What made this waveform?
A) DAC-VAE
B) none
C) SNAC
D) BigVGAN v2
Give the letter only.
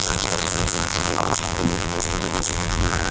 D